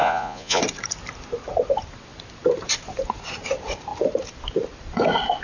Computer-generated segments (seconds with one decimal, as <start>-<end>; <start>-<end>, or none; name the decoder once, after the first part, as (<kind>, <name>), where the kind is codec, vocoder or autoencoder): 0.0-0.6 (vocoder, Vocos)